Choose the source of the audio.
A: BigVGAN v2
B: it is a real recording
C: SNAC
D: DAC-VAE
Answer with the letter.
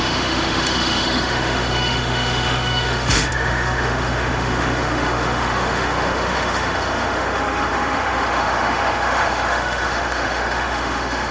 D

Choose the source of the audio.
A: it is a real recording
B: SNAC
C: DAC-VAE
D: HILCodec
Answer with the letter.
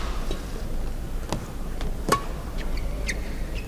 A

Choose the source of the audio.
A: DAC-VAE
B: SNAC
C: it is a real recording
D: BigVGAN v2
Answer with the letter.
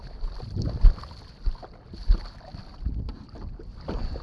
C